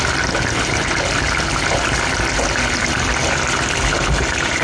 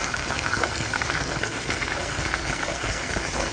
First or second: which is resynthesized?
second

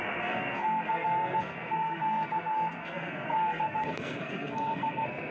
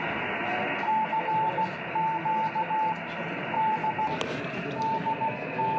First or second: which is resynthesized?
first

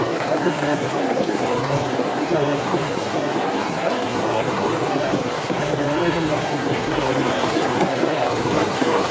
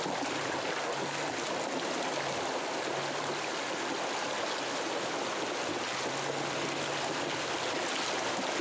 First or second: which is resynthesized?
first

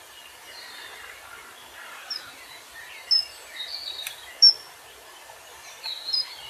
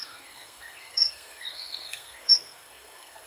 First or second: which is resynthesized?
second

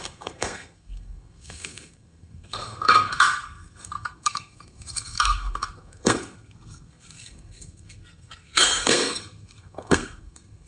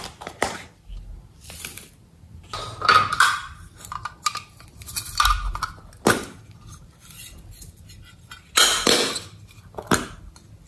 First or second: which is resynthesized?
first